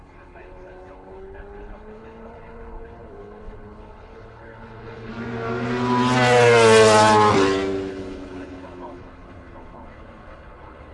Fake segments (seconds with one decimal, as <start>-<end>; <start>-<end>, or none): 0.0-5.1; 7.9-10.9